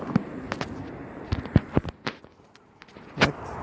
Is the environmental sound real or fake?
real